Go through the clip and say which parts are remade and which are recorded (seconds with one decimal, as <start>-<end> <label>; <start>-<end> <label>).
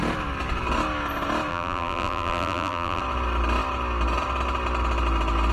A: 0.0-1.5 recorded; 1.5-3.0 remade; 3.0-5.5 recorded